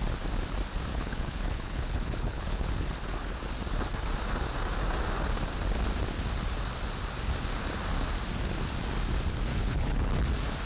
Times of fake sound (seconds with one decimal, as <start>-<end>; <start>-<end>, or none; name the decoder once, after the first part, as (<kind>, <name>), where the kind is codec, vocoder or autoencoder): 0.9-2.7 (codec, HILCodec); 9.5-10.1